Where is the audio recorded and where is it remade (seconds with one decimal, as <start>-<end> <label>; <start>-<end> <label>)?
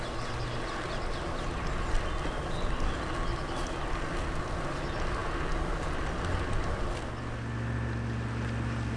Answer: 0.0-9.0 recorded